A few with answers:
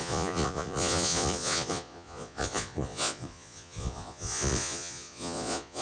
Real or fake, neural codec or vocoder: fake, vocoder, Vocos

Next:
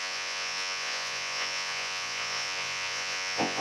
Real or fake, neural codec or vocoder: fake, vocoder, Vocos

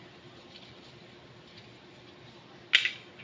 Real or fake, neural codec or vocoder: real